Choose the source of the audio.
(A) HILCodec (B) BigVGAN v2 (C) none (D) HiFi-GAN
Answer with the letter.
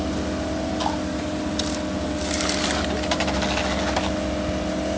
C